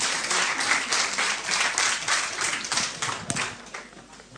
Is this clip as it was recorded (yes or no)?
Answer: yes